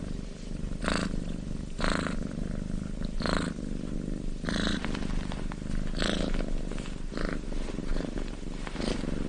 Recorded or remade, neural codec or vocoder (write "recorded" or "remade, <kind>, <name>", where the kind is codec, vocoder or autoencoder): recorded